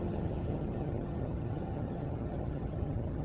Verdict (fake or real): fake